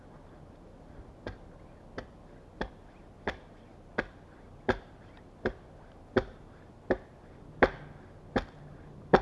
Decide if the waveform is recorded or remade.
recorded